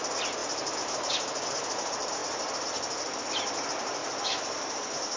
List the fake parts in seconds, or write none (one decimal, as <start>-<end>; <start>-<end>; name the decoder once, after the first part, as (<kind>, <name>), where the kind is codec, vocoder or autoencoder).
0.4-1.1 (vocoder, BigVGAN v2); 2.2-2.9; 4.0-4.6